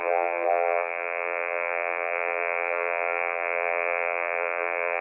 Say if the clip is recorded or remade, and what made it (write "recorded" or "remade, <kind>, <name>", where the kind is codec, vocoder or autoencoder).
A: remade, vocoder, BigVGAN v2